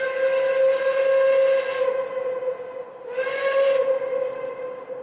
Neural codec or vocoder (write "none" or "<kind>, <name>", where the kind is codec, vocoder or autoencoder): none